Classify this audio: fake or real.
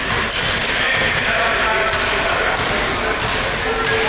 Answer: real